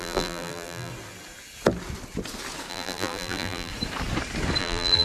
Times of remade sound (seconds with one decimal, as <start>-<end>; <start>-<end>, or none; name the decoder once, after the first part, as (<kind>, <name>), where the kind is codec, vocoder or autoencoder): 0.0-0.9 (vocoder, BigVGAN v2); 2.7-3.7; 4.6-5.0